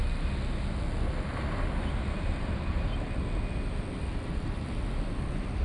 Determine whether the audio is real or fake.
real